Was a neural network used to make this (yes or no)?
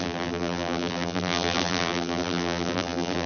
yes